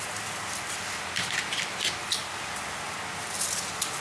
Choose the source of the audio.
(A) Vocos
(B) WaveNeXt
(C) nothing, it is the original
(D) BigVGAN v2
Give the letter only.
C